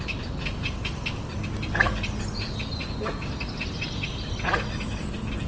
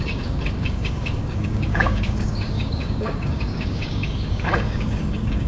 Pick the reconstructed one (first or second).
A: second